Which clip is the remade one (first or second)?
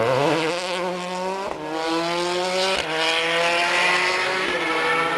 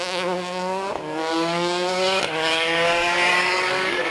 second